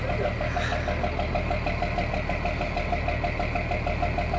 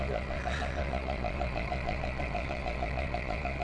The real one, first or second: first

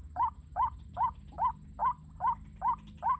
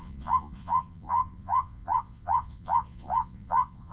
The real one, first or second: first